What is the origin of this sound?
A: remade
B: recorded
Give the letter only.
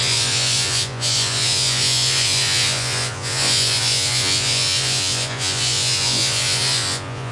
A